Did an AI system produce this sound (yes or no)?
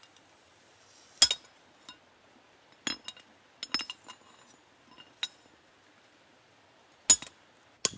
no